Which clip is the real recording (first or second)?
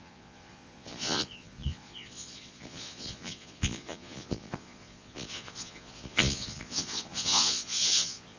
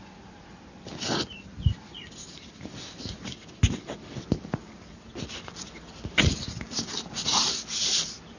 second